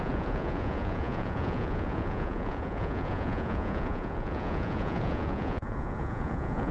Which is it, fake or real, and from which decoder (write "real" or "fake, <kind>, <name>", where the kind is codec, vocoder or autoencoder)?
fake, vocoder, Vocos